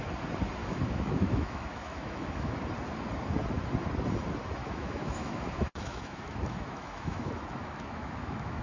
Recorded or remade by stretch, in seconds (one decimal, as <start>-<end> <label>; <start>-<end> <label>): 0.0-0.6 recorded; 0.6-2.6 remade; 2.6-4.6 recorded; 4.6-8.6 remade